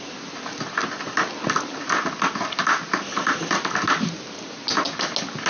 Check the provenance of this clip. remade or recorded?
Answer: recorded